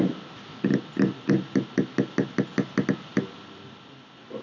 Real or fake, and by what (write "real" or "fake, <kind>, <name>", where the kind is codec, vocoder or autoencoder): real